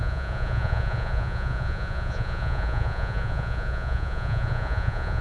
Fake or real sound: fake